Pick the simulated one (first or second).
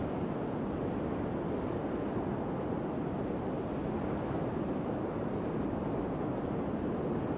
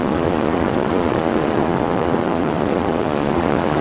second